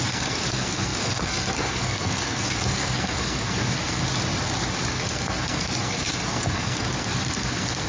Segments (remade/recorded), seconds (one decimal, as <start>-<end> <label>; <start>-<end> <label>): 0.0-4.0 remade; 4.0-4.9 recorded; 4.9-7.9 remade